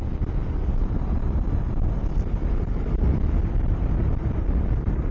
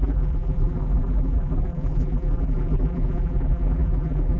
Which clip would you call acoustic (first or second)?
first